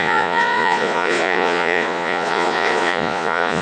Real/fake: fake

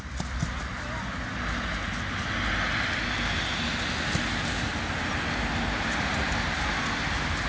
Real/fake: real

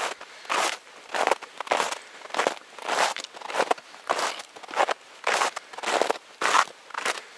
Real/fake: real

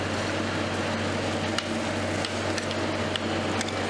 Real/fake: real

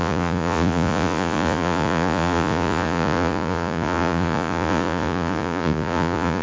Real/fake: fake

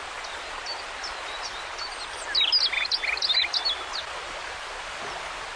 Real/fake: real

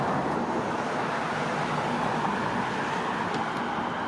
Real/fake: real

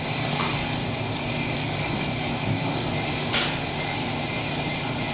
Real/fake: real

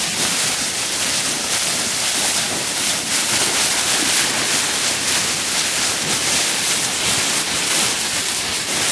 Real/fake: real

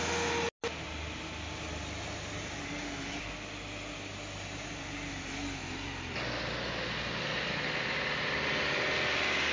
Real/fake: real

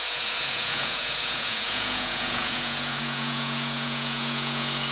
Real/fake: fake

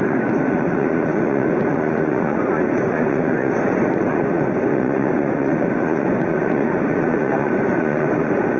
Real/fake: fake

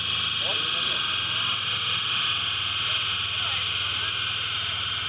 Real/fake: real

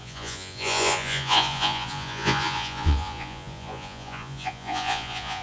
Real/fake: fake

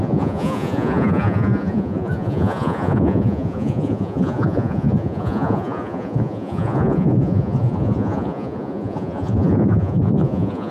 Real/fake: fake